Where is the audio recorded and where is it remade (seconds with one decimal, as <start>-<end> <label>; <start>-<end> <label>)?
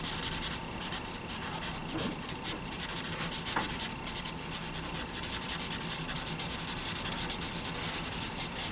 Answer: 0.0-8.7 recorded